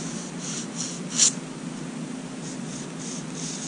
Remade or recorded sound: recorded